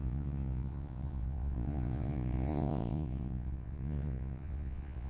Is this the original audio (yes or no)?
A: no